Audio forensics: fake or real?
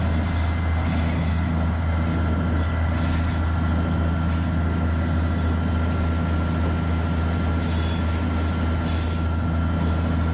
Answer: real